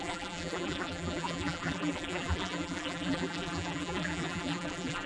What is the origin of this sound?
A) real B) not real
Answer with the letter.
B